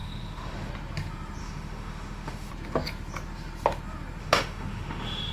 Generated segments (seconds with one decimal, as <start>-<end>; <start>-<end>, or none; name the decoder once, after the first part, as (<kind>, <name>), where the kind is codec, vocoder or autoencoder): 0.0-0.7 (autoencoder, DAC-VAE); 1.4-2.5; 4.2-5.3

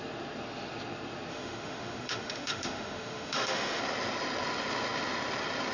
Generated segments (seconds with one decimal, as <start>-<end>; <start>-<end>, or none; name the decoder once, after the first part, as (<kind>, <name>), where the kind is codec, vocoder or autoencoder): 1.3-3.8 (autoencoder, DAC-VAE)

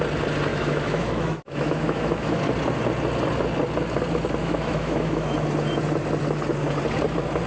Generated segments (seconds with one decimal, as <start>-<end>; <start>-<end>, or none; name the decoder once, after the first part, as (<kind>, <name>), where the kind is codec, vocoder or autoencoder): 0.5-2.4 (autoencoder, DAC-VAE); 4.4-5.3

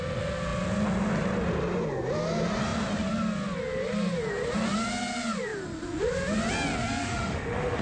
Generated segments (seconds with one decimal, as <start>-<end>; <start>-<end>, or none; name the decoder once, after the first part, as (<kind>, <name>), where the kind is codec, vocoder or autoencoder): 7.0-7.8 (autoencoder, DAC-VAE)

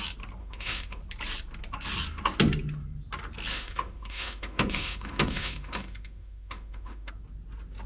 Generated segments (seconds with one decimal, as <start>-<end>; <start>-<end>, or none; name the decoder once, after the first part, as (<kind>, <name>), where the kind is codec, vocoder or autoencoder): 0.4-1.0 (autoencoder, DAC-VAE); 3.5-7.1